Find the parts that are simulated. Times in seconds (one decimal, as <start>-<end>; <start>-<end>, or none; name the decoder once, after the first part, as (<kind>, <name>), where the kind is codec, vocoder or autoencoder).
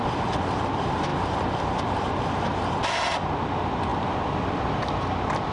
none